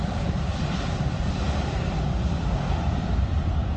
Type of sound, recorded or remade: remade